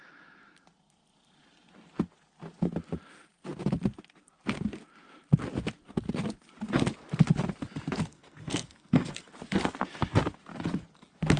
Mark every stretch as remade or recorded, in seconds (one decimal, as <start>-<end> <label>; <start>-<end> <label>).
0.0-8.1 recorded; 8.1-9.3 remade; 9.3-11.4 recorded